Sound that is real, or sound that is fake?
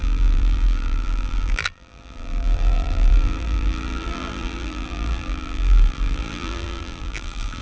fake